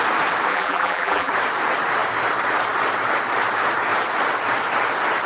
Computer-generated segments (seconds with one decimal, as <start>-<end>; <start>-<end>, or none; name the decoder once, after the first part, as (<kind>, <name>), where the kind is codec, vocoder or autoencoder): 0.5-1.3 (vocoder, BigVGAN v2)